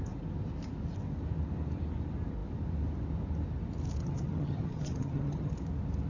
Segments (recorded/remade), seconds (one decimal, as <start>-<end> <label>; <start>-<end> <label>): 0.0-4.0 recorded; 4.0-5.5 remade; 5.5-6.1 recorded